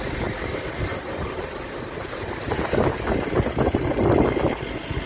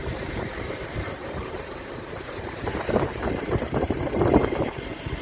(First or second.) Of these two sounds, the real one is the first